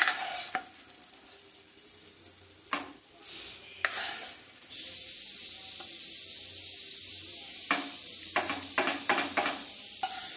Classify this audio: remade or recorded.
recorded